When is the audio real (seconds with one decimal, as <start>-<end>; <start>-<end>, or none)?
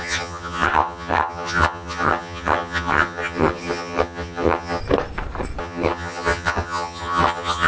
4.8-5.6